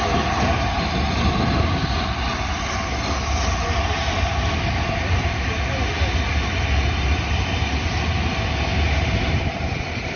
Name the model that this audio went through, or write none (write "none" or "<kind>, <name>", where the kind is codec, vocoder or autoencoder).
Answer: none